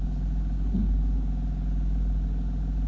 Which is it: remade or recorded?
recorded